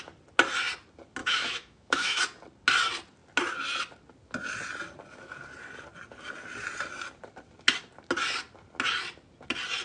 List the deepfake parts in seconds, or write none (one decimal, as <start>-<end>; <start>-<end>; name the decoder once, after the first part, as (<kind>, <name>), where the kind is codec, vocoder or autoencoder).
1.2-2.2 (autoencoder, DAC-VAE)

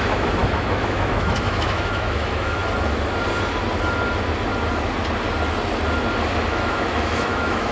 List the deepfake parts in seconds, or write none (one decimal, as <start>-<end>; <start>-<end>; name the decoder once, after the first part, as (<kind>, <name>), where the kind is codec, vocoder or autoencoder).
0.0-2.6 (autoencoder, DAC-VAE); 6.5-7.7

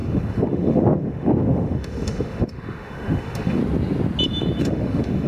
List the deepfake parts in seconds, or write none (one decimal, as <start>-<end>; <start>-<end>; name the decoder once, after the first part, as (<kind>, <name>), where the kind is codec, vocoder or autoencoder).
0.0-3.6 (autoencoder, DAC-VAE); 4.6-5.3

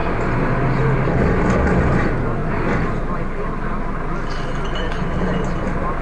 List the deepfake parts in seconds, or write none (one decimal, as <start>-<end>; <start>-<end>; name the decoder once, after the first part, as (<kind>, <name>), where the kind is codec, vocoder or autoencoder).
none

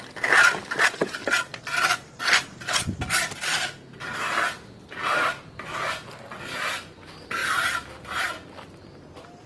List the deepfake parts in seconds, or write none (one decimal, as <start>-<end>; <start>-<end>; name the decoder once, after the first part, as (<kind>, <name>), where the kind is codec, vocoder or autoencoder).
none

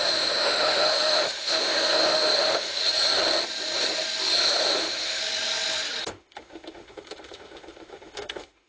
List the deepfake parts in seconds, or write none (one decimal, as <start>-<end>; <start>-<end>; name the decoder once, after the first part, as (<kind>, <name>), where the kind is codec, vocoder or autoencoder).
0.0-2.8 (autoencoder, DAC-VAE); 4.5-5.2; 6.0-8.7

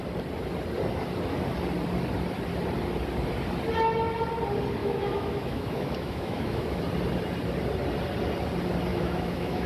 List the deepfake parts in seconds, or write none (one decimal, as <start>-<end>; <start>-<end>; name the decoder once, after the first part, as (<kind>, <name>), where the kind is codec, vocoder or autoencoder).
4.8-6.8 (autoencoder, DAC-VAE); 8.9-9.7